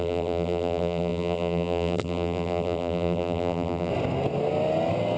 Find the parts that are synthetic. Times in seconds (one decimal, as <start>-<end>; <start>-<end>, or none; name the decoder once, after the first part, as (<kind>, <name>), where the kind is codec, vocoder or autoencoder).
0.0-3.9 (vocoder, BigVGAN v2)